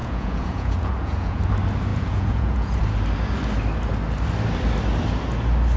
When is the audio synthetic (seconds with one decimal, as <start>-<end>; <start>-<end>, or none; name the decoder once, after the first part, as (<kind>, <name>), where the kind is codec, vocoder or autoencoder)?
0.0-1.5 (vocoder, Vocos); 1.9-2.8